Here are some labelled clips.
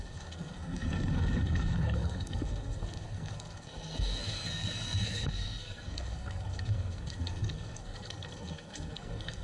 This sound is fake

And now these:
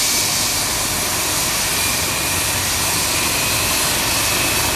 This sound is real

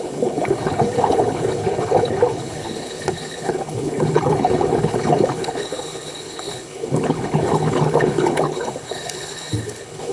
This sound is fake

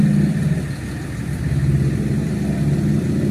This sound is real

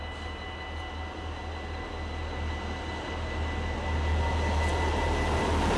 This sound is real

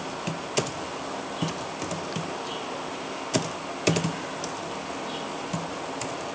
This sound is real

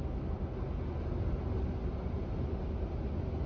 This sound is real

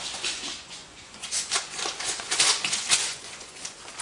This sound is fake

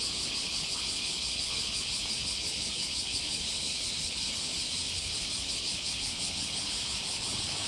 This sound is fake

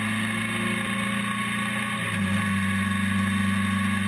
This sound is real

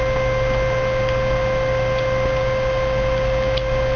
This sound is real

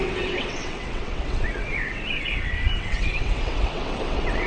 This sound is fake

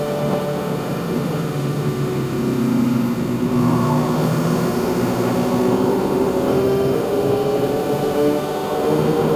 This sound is fake